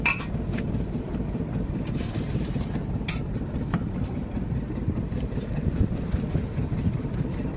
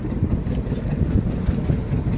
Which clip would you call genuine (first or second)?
second